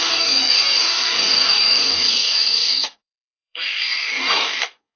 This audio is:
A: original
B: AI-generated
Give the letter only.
B